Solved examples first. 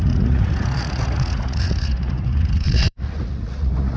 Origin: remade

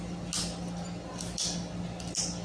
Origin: recorded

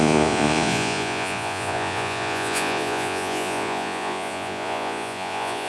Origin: remade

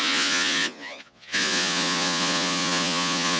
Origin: remade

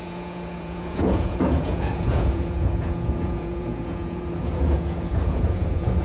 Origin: remade